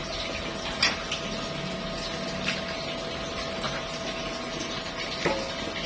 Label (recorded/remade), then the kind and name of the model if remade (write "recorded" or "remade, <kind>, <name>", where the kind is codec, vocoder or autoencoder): recorded